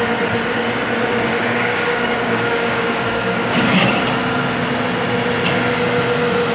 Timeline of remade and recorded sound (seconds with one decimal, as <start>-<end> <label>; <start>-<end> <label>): 0.0-1.3 recorded; 1.3-4.0 remade; 4.0-6.5 recorded